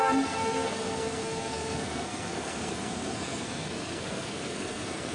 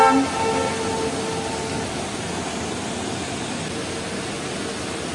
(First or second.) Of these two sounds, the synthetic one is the first